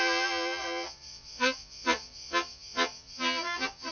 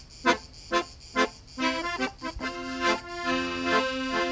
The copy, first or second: first